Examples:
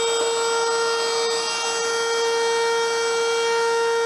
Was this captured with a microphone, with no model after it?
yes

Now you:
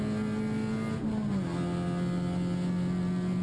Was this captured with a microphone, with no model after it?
yes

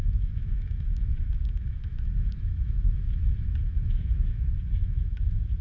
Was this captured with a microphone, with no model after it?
no